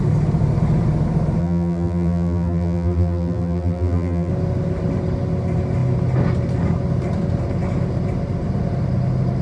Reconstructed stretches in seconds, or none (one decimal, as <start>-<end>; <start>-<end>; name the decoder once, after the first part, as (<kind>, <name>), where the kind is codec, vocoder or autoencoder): 1.4-4.3 (vocoder, BigVGAN v2)